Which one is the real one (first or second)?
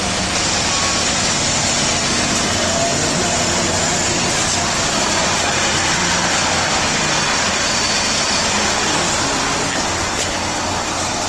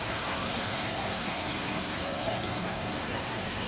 first